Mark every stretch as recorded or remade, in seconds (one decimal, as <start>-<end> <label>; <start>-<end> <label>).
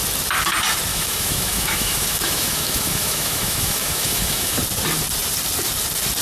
0.0-0.9 recorded; 0.9-4.6 remade; 4.6-6.2 recorded